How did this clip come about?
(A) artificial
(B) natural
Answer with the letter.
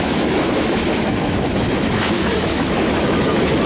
A